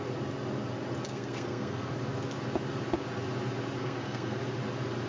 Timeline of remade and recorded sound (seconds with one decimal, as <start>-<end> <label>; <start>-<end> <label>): 0.0-1.1 recorded; 1.1-1.9 remade; 1.9-3.8 recorded; 3.8-4.4 remade; 4.4-5.1 recorded

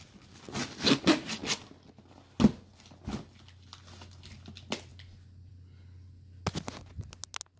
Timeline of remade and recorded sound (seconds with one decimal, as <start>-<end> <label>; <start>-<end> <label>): 0.0-7.6 recorded